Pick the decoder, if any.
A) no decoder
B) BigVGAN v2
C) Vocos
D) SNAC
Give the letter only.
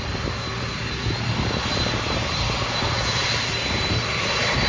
B